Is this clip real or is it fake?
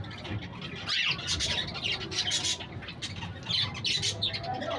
real